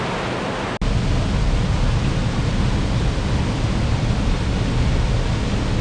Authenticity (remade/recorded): recorded